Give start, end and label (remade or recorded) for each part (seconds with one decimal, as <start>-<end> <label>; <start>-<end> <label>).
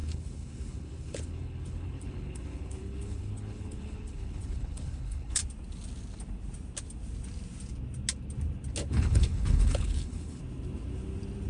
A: 0.0-5.4 remade; 5.4-8.9 recorded; 8.9-10.4 remade; 10.4-11.5 recorded